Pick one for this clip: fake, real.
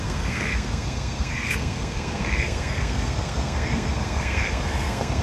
fake